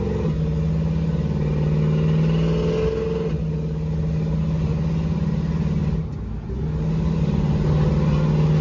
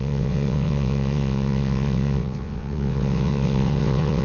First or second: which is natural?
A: first